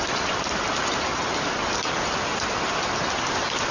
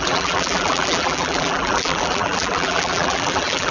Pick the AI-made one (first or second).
second